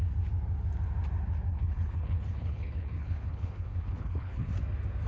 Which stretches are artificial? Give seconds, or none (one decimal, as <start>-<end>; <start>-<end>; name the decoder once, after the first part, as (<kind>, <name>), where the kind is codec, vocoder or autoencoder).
1.5-4.5 (codec, HILCodec)